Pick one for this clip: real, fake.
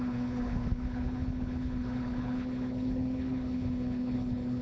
fake